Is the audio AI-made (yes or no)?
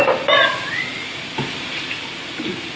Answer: no